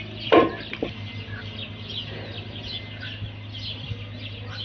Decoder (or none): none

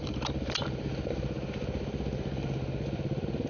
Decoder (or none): none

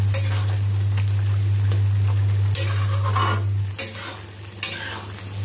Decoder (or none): none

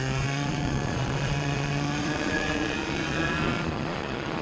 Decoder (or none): vocoder, Vocos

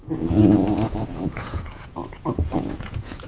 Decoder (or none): vocoder, Vocos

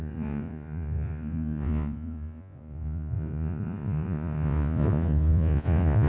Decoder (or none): vocoder, Vocos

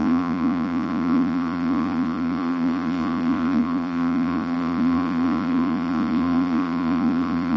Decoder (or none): vocoder, Vocos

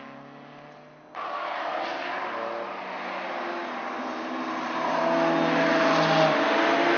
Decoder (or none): none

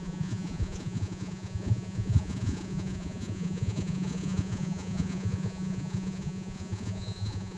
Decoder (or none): vocoder, Vocos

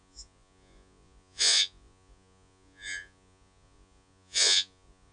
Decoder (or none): vocoder, Vocos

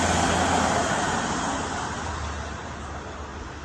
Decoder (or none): none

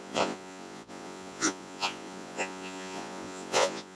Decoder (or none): vocoder, Vocos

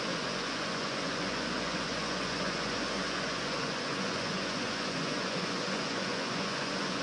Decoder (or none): vocoder, Vocos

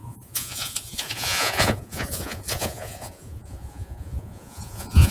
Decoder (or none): vocoder, Vocos